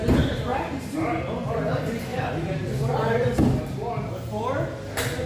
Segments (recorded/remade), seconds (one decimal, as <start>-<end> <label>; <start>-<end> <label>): 0.0-2.1 recorded; 2.1-3.4 remade; 3.4-5.3 recorded

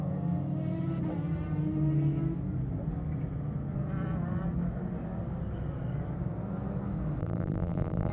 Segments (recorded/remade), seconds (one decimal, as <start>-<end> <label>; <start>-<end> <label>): 0.0-7.2 recorded; 7.2-8.1 remade

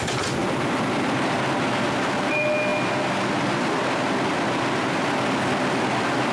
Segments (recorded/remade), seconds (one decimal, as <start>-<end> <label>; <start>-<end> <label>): 0.0-0.4 recorded; 0.4-1.7 remade; 1.7-6.3 recorded

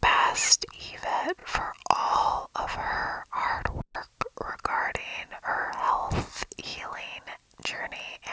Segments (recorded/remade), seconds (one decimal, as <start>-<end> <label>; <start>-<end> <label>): 0.0-8.3 recorded

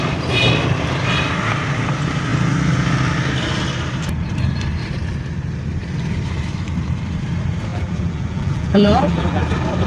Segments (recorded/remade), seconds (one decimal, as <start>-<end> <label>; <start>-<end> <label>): 0.0-7.7 recorded; 7.7-9.4 remade; 9.4-9.9 recorded

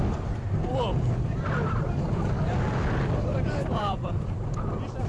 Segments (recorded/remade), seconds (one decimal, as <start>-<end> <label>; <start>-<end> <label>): 0.0-5.1 recorded